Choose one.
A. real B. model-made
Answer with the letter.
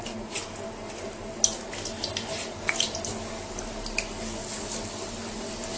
A